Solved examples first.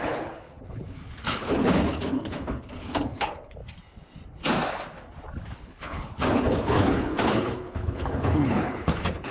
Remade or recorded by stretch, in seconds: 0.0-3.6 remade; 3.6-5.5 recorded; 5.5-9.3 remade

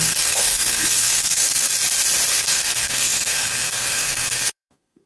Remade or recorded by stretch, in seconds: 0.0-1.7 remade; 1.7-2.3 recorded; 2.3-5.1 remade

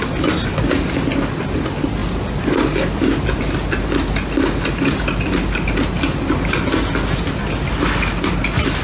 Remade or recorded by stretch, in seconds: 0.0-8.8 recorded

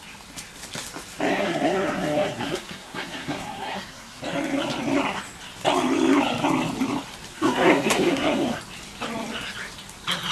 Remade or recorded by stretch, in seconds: 0.0-1.3 recorded; 1.3-4.2 remade; 4.2-7.3 recorded; 7.3-8.6 remade; 8.6-10.3 recorded